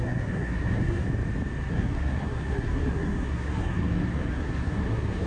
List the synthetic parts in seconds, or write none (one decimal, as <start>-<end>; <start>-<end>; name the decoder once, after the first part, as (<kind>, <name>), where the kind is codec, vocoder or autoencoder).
0.0-1.1 (codec, SNAC); 1.7-5.3